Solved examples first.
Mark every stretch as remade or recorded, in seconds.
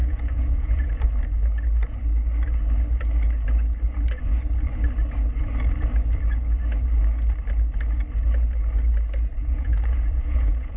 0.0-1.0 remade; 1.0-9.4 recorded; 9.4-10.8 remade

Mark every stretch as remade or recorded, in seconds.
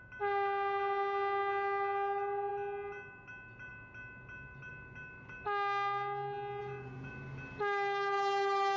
0.0-6.6 recorded; 6.6-7.1 remade; 7.1-8.8 recorded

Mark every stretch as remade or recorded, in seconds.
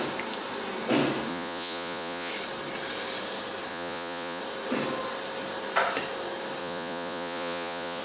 0.0-1.3 recorded; 1.3-2.3 remade; 2.3-3.7 recorded; 3.7-4.4 remade; 4.4-6.6 recorded; 6.6-8.0 remade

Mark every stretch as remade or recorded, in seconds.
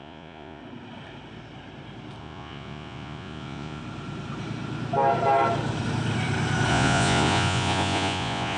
0.0-0.6 remade; 0.6-2.2 recorded; 2.2-3.8 remade; 3.8-6.7 recorded; 6.7-8.6 remade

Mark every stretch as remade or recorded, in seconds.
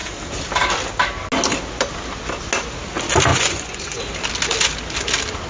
0.0-3.3 recorded; 3.3-4.0 remade; 4.0-5.5 recorded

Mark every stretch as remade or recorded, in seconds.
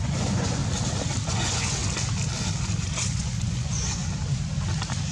0.0-0.6 remade; 0.6-1.3 recorded; 1.3-1.8 remade; 1.8-2.8 recorded; 2.8-4.0 remade; 4.0-5.1 recorded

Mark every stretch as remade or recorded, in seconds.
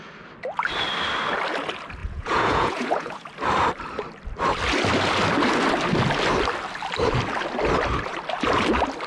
0.0-2.0 recorded; 2.0-3.3 remade; 3.3-9.1 recorded